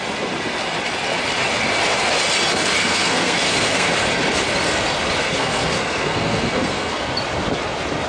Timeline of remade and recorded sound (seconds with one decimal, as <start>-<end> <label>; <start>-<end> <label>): 0.0-2.8 recorded; 2.8-3.9 remade; 3.9-5.2 recorded; 5.2-7.1 remade; 7.1-8.1 recorded